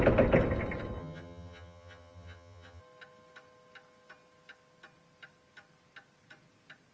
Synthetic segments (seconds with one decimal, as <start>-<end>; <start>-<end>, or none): 1.0-2.8